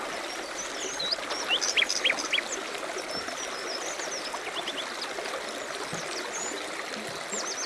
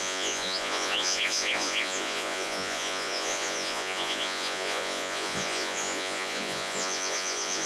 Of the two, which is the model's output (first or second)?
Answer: second